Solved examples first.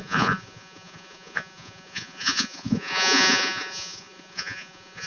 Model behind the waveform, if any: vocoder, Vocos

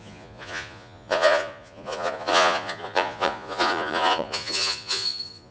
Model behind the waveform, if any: vocoder, Vocos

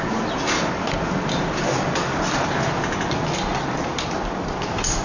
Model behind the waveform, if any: none